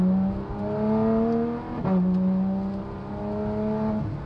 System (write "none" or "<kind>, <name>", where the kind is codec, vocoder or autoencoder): none